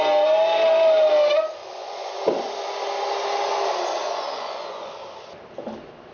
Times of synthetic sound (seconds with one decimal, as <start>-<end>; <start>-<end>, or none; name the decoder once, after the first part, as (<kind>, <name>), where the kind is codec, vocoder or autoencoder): 1.6-2.2 (vocoder, Vocos); 4.0-5.0